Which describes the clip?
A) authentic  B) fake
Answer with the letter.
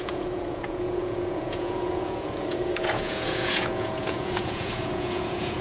B